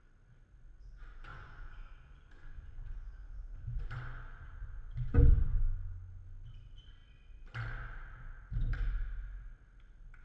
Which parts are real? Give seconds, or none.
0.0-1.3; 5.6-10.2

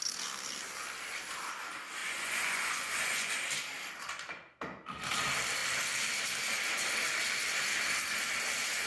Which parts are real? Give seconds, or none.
0.0-2.0; 3.3-8.9